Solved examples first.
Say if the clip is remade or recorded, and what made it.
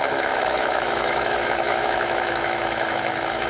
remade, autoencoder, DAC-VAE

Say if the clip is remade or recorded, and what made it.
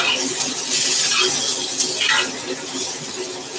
recorded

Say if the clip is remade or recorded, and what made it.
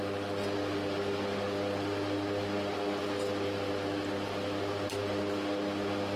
recorded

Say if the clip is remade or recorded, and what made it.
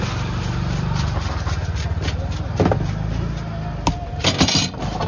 recorded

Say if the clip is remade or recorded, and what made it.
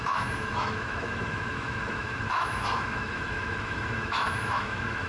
remade, autoencoder, DAC-VAE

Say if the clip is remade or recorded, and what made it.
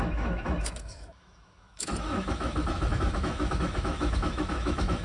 remade, autoencoder, DAC-VAE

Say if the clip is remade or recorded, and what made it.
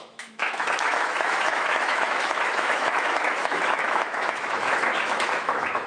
remade, autoencoder, DAC-VAE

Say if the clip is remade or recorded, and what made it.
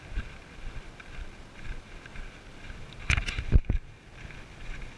recorded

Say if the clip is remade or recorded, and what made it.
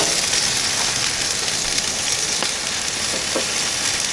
recorded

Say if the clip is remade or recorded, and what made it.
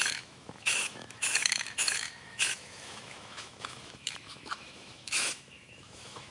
remade, autoencoder, DAC-VAE